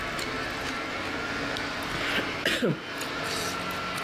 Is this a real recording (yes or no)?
yes